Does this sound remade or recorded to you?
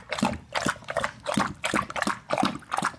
recorded